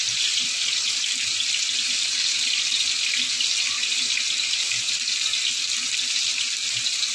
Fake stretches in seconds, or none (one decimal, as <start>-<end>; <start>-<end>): none